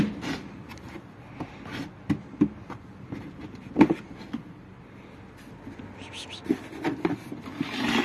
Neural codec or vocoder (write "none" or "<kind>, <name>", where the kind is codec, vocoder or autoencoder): none